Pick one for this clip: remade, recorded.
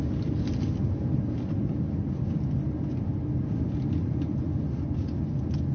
recorded